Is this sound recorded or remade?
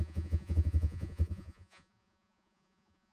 remade